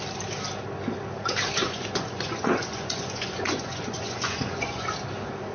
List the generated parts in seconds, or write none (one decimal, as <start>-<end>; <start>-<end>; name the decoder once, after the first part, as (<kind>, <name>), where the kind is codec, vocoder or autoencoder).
1.6-4.9 (vocoder, Vocos)